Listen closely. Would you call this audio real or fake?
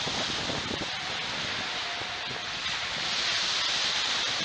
real